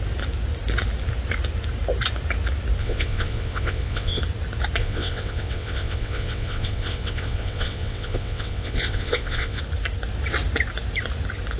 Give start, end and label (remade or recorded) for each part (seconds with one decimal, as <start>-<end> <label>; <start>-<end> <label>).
0.0-2.8 recorded; 2.8-4.2 remade; 4.2-4.8 recorded; 4.8-9.6 remade; 9.6-11.6 recorded